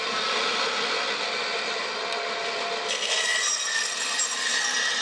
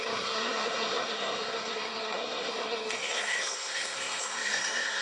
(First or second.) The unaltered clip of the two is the first